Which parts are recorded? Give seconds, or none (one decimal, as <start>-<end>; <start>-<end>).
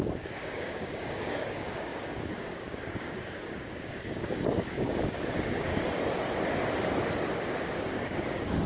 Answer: 5.7-7.7